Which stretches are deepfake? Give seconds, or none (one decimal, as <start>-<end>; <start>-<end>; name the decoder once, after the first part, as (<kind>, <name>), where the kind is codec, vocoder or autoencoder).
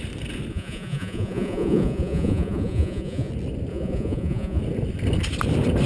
0.5-3.3 (vocoder, Vocos); 3.7-4.6